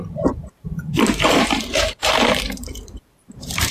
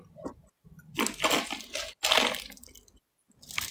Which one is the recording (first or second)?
second